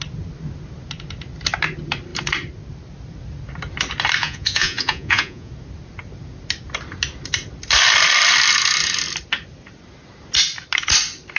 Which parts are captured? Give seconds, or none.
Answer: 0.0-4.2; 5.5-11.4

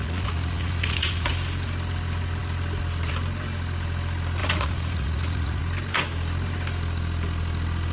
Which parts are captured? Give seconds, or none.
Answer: 1.3-4.4; 5.6-7.9

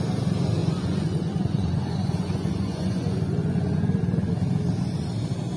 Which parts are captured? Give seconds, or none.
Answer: 0.0-0.6; 4.0-5.6

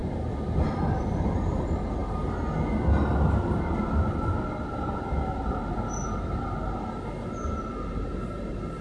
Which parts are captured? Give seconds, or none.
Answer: 0.0-8.8

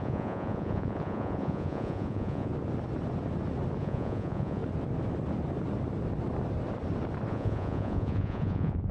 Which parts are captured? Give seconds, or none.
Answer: 2.5-3.8; 4.6-7.3

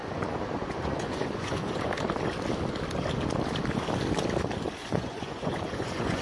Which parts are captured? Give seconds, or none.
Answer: 1.9-4.8

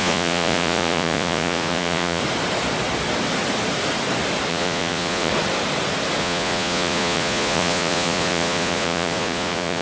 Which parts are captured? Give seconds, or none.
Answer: 2.2-4.5; 5.3-6.2

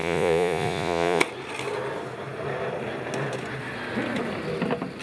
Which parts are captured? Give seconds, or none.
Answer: 1.2-5.0